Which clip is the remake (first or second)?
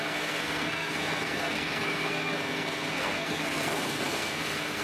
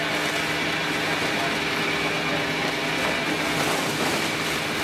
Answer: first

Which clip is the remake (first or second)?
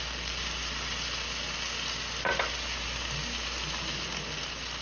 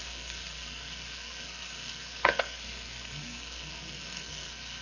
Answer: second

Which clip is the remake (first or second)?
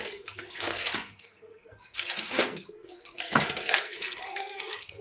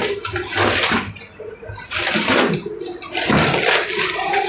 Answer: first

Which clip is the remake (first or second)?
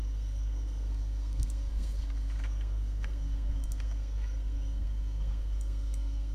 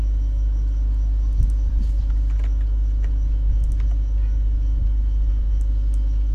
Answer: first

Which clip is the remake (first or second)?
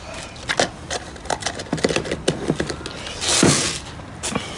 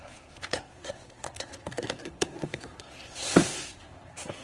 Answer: second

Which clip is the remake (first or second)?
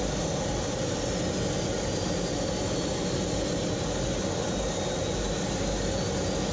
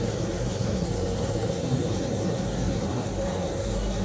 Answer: second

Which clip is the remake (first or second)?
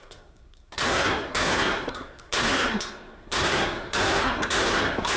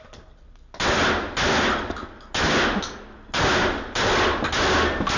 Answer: first